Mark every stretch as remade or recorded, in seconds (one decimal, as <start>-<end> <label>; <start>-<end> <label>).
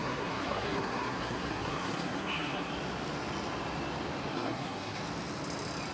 0.0-2.7 remade; 2.7-4.3 recorded; 4.3-5.0 remade; 5.0-5.9 recorded